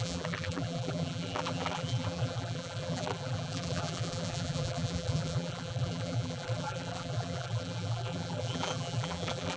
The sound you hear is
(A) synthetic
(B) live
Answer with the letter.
A